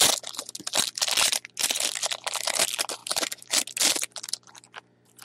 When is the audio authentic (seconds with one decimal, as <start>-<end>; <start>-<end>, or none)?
0.0-5.2